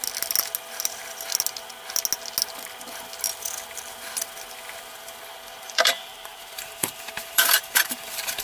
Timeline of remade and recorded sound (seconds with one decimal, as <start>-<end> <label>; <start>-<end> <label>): 0.0-4.8 recorded; 4.8-8.4 remade